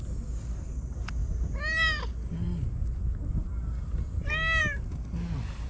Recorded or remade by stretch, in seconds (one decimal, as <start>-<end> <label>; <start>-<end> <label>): 0.0-5.7 recorded